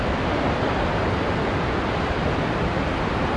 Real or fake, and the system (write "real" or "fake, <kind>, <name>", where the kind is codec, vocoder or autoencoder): real